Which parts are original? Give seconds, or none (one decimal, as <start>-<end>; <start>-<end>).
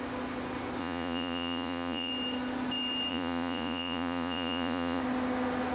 0.0-0.8; 2.1-3.1; 5.0-5.7